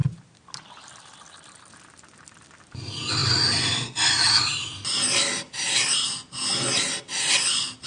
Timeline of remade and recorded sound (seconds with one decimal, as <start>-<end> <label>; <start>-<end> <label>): 0.0-7.9 recorded

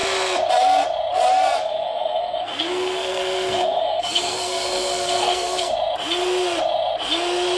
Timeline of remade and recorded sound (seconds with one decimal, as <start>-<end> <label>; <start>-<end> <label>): 0.0-1.6 recorded; 1.6-5.7 remade; 5.7-7.6 recorded

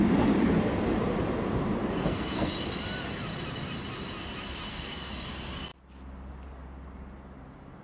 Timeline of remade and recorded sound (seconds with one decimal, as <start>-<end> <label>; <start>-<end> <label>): 0.0-2.0 recorded; 2.0-2.5 remade; 2.5-4.7 recorded; 4.7-5.3 remade; 5.3-7.8 recorded

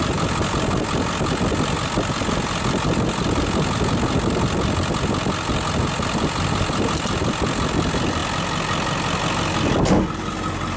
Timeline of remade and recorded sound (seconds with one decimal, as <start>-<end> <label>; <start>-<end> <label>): 0.0-10.8 recorded

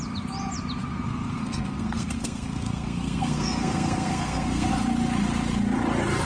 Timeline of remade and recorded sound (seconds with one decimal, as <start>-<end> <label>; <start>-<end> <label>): 0.0-0.9 recorded; 0.9-4.7 remade; 4.7-6.3 recorded

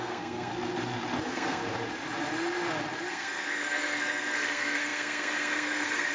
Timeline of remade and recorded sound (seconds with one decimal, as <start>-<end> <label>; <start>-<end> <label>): 0.0-0.5 remade; 0.5-1.2 recorded; 1.2-1.6 remade; 1.6-3.1 recorded; 3.1-6.1 remade